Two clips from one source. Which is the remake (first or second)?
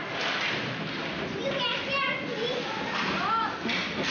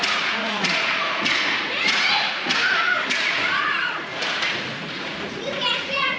second